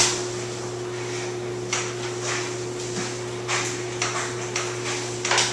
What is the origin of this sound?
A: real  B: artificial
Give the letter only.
A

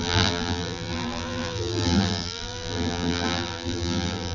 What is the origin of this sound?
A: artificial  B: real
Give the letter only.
A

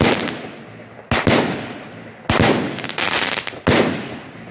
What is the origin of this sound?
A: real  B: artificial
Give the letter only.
A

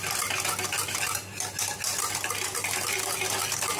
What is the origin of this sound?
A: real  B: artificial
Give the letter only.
A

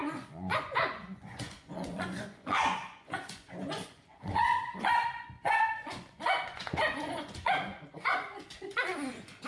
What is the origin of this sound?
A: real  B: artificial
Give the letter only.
B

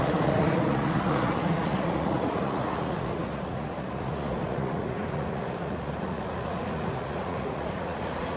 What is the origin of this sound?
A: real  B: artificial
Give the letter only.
B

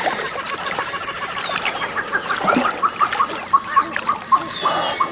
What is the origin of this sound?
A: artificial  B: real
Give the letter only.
B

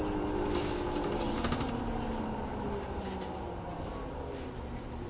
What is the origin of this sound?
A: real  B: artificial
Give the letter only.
A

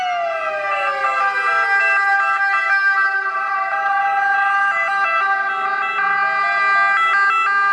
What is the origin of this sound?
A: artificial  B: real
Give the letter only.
B